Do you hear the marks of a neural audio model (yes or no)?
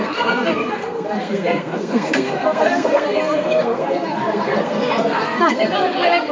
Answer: yes